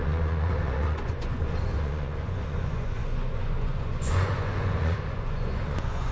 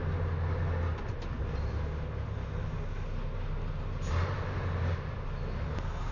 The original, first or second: second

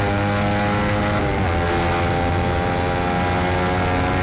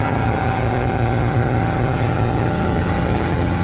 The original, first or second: first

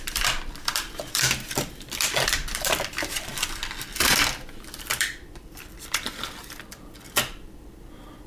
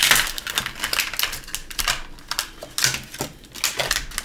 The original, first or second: second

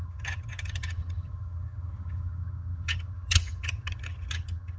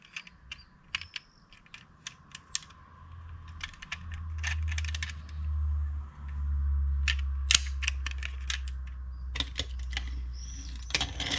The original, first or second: second